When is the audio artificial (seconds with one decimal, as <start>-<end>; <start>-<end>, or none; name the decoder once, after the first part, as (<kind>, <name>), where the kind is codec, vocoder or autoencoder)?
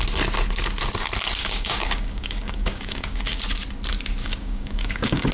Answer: 1.4-3.4 (codec, DAC); 4.2-5.3